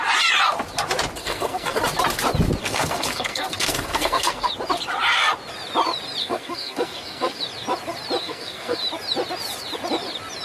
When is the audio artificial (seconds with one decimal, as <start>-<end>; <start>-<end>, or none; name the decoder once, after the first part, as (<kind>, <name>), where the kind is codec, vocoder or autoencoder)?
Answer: 1.2-1.8 (codec, SNAC); 2.6-4.5; 6.2-7.4; 8.2-8.8